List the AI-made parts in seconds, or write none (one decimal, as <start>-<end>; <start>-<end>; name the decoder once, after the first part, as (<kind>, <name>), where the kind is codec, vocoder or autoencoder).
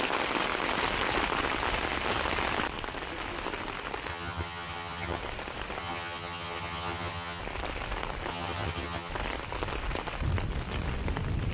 4.1-5.2 (vocoder, HiFi-GAN); 5.8-7.4; 8.3-9.1